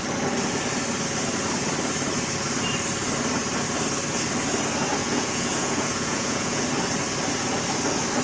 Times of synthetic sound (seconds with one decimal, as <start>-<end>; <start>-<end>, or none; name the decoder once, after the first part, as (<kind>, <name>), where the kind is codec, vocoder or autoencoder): 5.0-6.6 (vocoder, Vocos)